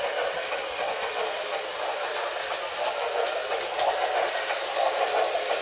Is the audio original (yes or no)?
yes